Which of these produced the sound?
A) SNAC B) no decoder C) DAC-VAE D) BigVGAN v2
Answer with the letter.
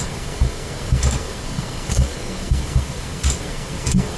A